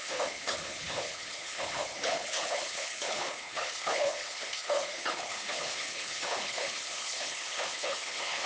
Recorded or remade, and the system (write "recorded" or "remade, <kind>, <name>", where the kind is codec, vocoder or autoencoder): remade, codec, HILCodec